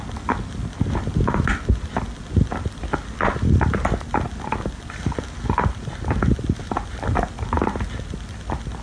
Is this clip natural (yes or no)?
yes